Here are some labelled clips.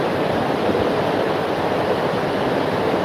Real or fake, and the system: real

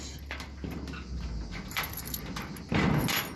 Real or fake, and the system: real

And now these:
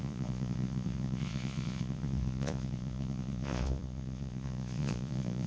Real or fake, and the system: fake, vocoder, Vocos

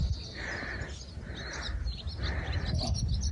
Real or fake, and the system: real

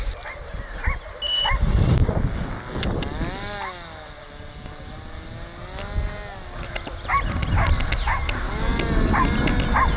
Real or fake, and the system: real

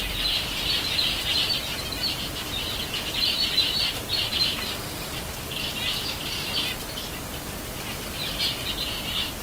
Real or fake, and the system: fake, vocoder, BigVGAN v2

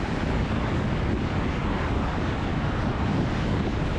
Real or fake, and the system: fake, codec, DAC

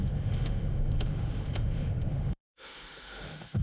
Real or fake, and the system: fake, autoencoder, DAC-VAE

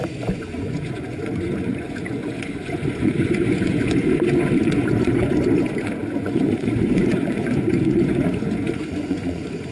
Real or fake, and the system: fake, vocoder, Vocos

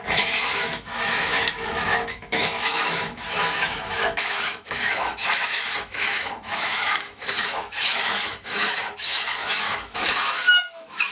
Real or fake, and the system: fake, autoencoder, DAC-VAE